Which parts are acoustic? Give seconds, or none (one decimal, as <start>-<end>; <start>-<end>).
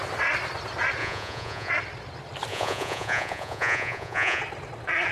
0.0-1.0; 1.7-2.5; 4.4-5.1